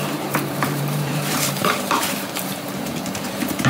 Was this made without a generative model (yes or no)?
no